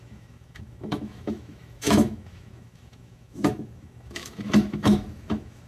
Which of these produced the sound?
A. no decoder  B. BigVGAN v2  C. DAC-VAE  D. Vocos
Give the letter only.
C